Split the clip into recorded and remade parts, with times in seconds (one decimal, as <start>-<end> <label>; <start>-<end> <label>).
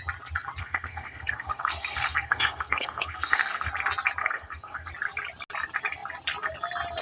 0.0-0.6 recorded; 0.6-3.7 remade; 3.7-4.2 recorded; 4.2-4.9 remade; 4.9-7.0 recorded